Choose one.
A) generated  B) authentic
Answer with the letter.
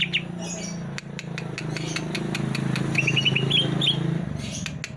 B